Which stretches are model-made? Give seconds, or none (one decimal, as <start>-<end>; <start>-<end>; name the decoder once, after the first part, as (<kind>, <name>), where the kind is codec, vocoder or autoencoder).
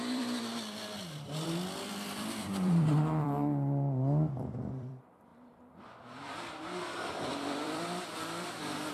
0.0-8.9 (vocoder, BigVGAN v2)